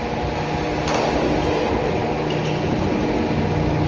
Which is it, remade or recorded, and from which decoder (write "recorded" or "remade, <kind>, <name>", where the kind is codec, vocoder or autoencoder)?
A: recorded